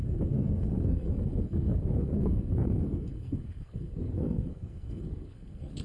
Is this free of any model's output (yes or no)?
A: no